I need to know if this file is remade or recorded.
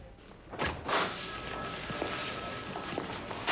recorded